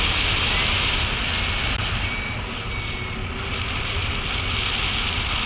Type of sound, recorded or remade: recorded